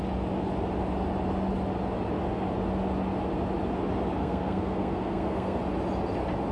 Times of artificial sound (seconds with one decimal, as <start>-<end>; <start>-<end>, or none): 4.2-5.6